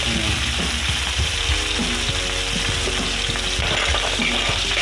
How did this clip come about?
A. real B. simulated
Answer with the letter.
A